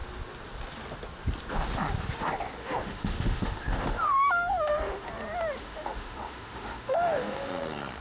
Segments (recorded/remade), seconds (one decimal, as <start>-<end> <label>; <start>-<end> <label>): 0.0-2.6 recorded; 2.6-5.1 remade; 5.1-5.6 recorded; 5.6-7.5 remade; 7.5-8.0 recorded